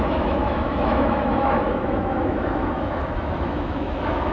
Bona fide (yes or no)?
no